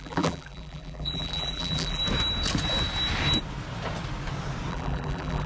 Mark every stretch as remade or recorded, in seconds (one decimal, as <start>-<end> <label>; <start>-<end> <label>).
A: 0.0-2.0 remade; 2.0-4.7 recorded; 4.7-5.5 remade